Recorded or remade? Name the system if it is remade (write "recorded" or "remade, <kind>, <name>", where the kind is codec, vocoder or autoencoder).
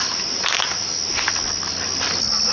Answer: recorded